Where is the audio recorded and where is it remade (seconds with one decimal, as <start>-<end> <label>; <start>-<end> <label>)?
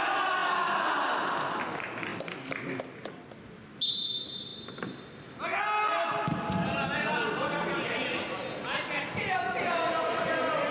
0.0-10.7 recorded